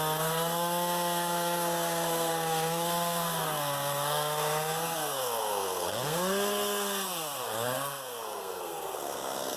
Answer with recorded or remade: remade